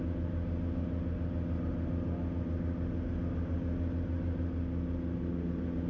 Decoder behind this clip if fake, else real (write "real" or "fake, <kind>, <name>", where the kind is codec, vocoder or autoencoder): real